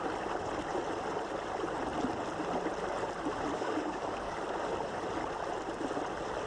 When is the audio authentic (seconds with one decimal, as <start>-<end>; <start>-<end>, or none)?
0.0-3.5; 4.4-6.5